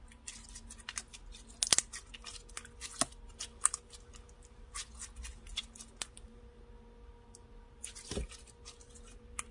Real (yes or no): yes